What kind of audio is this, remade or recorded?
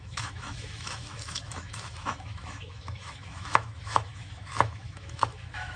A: remade